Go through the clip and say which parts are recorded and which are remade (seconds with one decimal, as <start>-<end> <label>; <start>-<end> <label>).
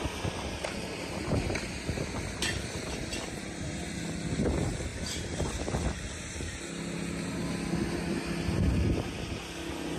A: 0.0-4.9 recorded; 4.9-6.6 remade; 6.6-10.0 recorded